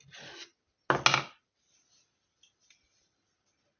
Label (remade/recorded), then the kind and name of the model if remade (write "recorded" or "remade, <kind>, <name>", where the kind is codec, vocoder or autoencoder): recorded